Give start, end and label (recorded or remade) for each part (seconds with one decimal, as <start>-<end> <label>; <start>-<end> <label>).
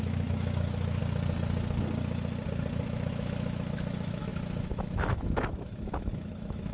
0.0-1.0 remade; 1.0-3.1 recorded; 3.1-6.7 remade